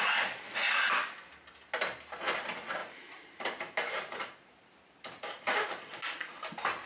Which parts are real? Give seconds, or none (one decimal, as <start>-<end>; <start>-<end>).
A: 0.0-2.8; 6.0-6.9